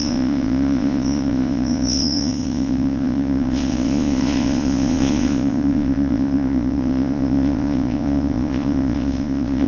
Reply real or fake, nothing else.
fake